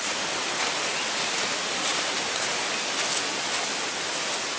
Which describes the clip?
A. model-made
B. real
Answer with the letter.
B